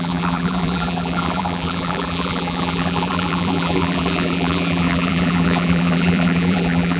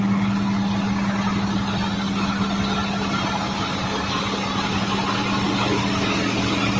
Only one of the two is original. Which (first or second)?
second